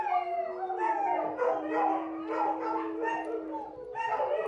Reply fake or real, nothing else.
real